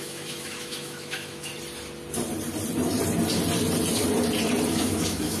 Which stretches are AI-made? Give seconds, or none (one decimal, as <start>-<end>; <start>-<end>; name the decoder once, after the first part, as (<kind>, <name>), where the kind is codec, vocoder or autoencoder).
0.0-1.5 (autoencoder, DAC-VAE); 4.7-5.4

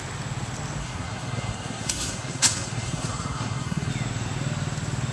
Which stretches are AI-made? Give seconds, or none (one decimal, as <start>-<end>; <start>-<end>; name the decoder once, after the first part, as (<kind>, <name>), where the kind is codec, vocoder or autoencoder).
0.8-3.9 (codec, SNAC)

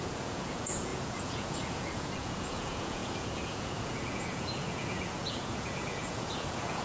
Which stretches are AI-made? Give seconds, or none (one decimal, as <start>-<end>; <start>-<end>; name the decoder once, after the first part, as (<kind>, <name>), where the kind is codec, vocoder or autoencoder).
0.0-6.8 (vocoder, Vocos)

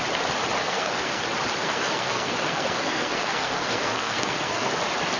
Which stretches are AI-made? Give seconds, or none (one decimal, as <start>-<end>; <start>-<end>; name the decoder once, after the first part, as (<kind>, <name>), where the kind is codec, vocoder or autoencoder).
0.6-1.2 (codec, SNAC); 1.6-4.7

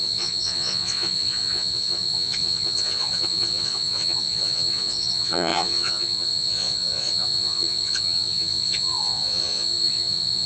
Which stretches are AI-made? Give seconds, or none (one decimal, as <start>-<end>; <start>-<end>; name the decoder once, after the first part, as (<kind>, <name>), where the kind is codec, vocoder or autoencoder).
0.0-10.5 (vocoder, Vocos)

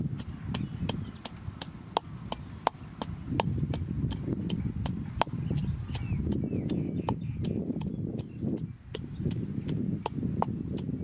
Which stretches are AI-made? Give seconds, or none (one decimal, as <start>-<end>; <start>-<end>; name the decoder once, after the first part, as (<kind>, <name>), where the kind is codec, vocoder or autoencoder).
none

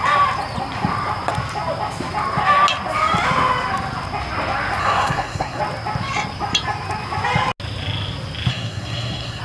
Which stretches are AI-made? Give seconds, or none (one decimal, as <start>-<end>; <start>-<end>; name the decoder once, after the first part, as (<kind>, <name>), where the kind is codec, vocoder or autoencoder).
4.8-5.6 (codec, SNAC); 8.5-9.4